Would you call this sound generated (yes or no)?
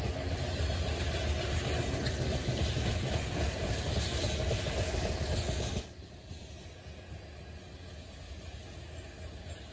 no